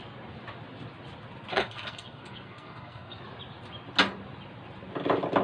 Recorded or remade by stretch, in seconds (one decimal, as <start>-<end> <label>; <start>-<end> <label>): 0.0-1.5 recorded; 1.5-3.2 remade; 3.2-5.4 recorded